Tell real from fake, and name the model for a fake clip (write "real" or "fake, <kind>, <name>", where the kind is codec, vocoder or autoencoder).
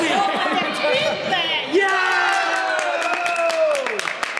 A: real